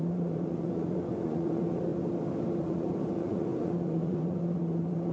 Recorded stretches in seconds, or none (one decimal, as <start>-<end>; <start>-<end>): 1.9-2.6